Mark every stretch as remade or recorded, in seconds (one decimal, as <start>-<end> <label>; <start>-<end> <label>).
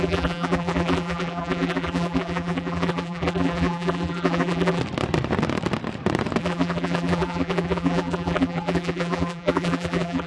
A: 0.0-4.8 remade; 4.8-6.4 recorded; 6.4-10.3 remade